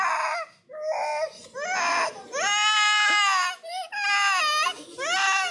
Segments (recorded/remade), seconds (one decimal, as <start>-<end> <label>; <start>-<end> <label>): 0.0-5.5 recorded